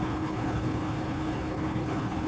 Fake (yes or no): yes